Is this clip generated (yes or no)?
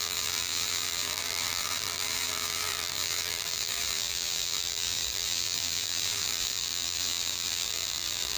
yes